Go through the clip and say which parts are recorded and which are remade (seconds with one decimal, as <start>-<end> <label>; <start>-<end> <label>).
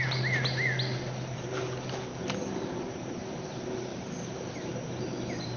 0.0-2.1 recorded; 2.1-3.4 remade; 3.4-3.9 recorded; 3.9-5.6 remade